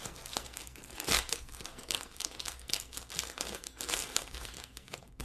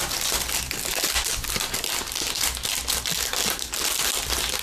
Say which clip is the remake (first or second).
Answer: first